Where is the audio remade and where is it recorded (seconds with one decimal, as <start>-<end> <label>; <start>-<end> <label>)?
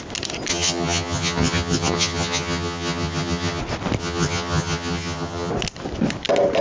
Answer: 0.0-0.5 recorded; 0.5-3.6 remade; 3.6-4.0 recorded; 4.0-5.5 remade; 5.5-6.6 recorded